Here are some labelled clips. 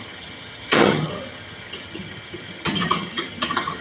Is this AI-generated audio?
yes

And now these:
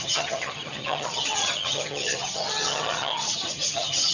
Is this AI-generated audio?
yes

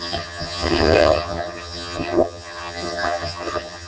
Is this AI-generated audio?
yes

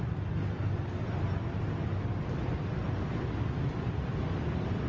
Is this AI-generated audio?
no